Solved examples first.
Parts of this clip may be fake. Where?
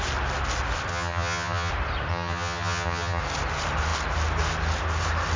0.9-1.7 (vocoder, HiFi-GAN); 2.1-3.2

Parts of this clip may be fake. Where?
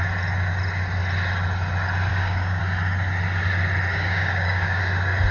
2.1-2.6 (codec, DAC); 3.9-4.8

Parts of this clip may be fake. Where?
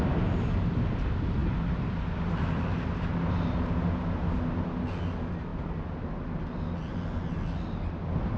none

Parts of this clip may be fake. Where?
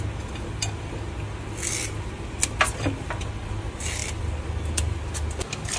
none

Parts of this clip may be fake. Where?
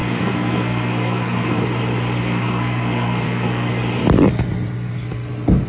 0.0-1.6 (codec, SNAC); 2.2-3.7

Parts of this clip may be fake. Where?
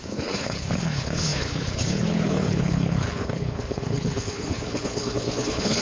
0.0-5.8 (codec, HILCodec)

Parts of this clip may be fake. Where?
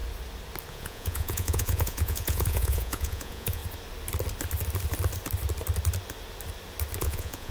0.7-3.6 (vocoder, Vocos); 7.0-7.5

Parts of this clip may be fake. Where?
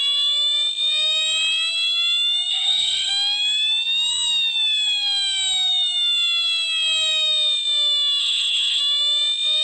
2.5-3.1 (codec, HILCodec); 8.2-8.8